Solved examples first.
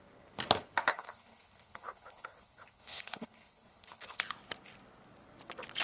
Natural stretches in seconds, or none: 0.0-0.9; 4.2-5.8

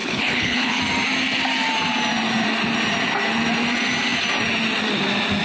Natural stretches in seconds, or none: 0.8-5.4

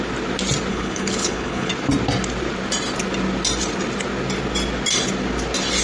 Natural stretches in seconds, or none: 0.0-0.7; 1.7-5.8

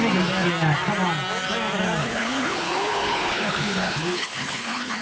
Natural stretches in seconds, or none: 0.0-2.0

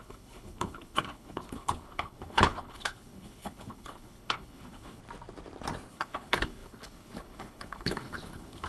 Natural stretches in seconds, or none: 5.0-5.9

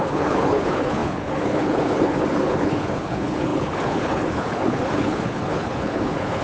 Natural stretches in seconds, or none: none

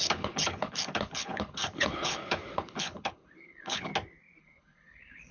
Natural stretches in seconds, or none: 3.9-4.4

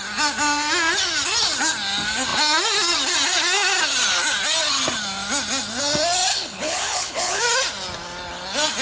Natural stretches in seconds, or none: 0.0-6.3; 7.4-8.8